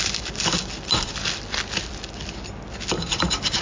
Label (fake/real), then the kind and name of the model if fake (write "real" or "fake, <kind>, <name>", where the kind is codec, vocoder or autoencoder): real